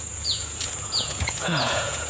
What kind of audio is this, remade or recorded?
remade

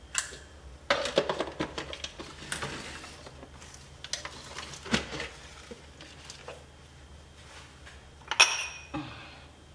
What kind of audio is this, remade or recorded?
recorded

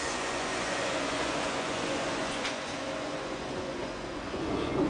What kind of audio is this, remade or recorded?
remade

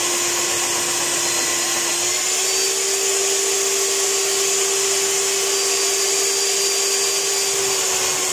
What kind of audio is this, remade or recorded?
recorded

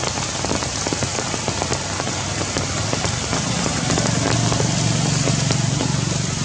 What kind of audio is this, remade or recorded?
recorded